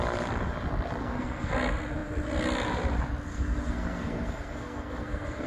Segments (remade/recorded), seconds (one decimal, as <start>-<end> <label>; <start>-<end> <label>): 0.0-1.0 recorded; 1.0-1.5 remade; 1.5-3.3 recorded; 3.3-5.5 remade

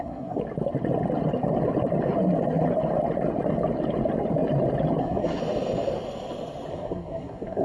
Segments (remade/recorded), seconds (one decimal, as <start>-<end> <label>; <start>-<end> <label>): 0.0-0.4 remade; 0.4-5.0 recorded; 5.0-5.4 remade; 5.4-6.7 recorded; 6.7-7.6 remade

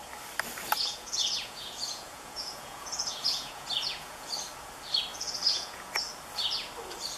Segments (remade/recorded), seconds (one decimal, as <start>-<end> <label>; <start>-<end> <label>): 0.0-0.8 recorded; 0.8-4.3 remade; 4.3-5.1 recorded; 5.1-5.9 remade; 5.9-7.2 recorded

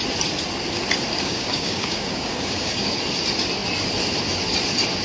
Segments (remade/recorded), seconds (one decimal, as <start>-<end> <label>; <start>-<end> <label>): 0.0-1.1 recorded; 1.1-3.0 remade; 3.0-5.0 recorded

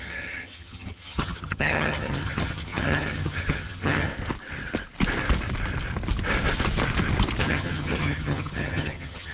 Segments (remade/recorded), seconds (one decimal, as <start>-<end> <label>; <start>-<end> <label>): 0.0-4.1 remade; 4.1-7.4 recorded; 7.4-9.3 remade